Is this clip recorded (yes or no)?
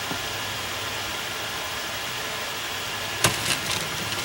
no